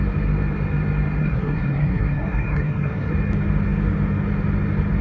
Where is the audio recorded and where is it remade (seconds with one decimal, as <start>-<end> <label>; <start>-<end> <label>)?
0.0-1.2 recorded; 1.2-3.1 remade; 3.1-5.0 recorded